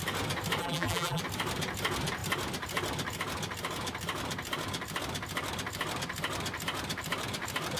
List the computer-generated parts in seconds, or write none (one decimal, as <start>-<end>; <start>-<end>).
0.6-1.2